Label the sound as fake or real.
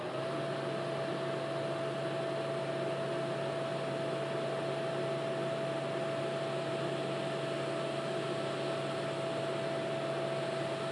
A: real